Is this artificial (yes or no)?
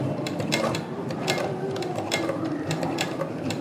yes